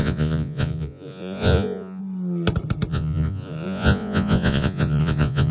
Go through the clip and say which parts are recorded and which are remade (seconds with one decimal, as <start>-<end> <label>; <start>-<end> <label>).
0.0-2.0 remade; 2.0-2.9 recorded; 2.9-5.5 remade